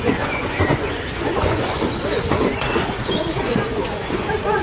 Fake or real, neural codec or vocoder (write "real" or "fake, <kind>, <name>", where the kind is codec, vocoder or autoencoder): fake, vocoder, Vocos